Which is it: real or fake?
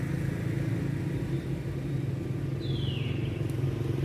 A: real